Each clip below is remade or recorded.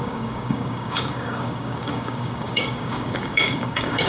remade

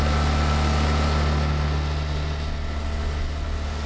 recorded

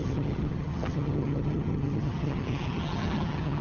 remade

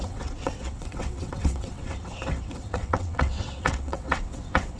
remade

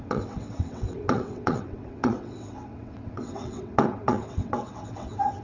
remade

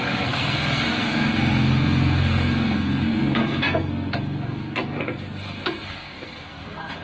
remade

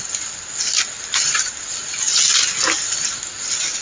recorded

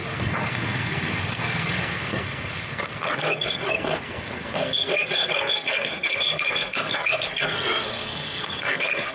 remade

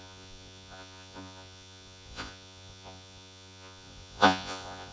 remade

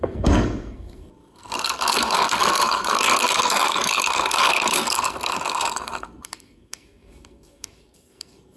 remade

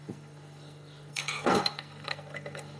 remade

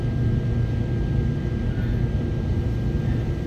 recorded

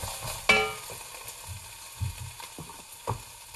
recorded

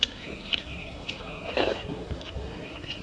remade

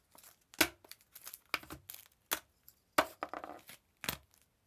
recorded